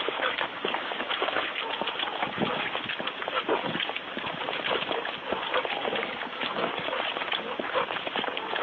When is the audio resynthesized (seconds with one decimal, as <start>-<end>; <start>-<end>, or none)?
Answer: 0.0-1.5; 5.8-6.7